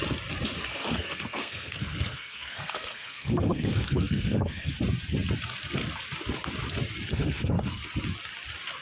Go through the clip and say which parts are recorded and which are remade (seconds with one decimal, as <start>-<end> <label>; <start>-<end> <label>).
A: 0.0-0.7 recorded; 0.7-4.7 remade; 4.7-7.1 recorded; 7.1-7.8 remade; 7.8-8.8 recorded